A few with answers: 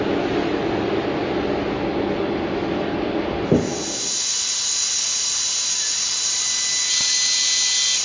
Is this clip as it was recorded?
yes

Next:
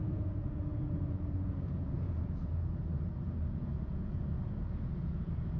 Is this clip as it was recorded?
no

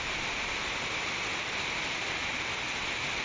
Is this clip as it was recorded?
yes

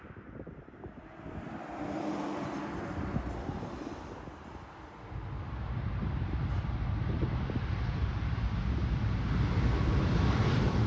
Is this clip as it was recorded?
yes